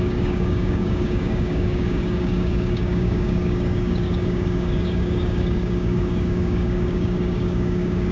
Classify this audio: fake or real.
fake